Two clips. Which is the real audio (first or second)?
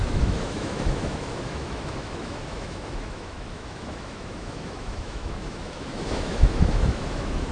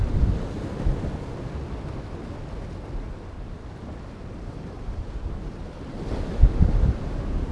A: second